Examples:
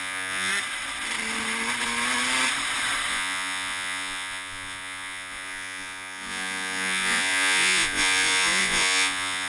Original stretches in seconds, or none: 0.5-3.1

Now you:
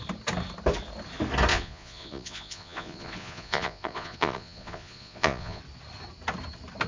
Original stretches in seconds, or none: 0.0-1.5; 5.6-6.9

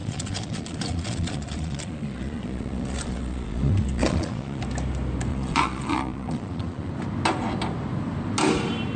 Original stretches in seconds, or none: 4.6-5.3; 6.9-9.0

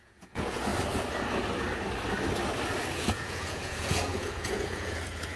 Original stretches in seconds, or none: 0.7-2.9

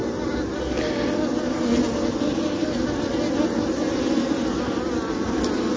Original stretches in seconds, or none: 0.0-5.8